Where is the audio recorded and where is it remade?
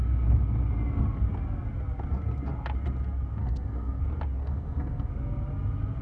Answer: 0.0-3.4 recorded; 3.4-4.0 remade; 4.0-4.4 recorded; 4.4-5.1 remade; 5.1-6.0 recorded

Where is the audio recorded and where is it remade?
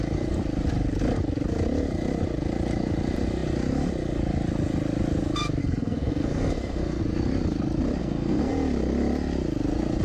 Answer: 0.0-5.6 recorded; 5.6-7.0 remade; 7.0-8.0 recorded; 8.0-8.5 remade; 8.5-10.0 recorded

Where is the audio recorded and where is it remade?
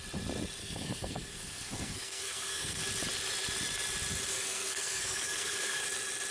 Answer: 0.0-0.6 recorded; 0.6-2.8 remade; 2.8-4.3 recorded; 4.3-5.8 remade; 5.8-6.3 recorded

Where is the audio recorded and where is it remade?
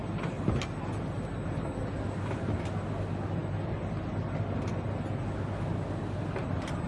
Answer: 0.0-6.9 recorded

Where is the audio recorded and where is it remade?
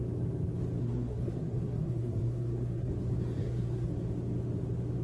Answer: 0.0-0.8 recorded; 0.8-2.9 remade; 2.9-3.4 recorded; 3.4-3.9 remade; 3.9-5.0 recorded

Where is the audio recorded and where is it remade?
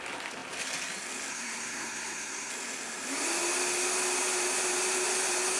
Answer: 0.0-1.3 recorded; 1.3-2.5 remade; 2.5-5.6 recorded